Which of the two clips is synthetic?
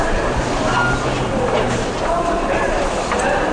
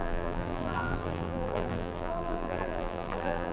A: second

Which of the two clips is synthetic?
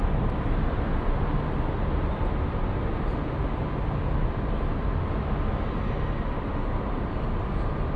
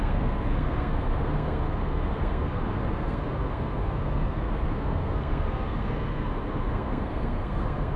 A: second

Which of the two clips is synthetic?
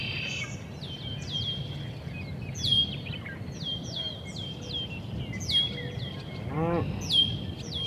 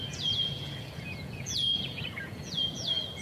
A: second